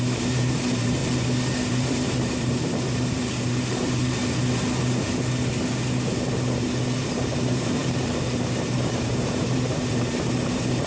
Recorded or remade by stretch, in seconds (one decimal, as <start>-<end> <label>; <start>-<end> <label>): 0.0-1.0 remade; 1.0-1.7 recorded; 1.7-4.2 remade; 4.2-7.0 recorded; 7.0-10.9 remade